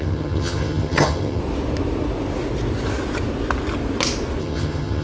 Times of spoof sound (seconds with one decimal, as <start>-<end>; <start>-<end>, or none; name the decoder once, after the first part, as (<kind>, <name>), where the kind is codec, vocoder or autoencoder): 0.0-1.4 (vocoder, HiFi-GAN); 4.4-5.0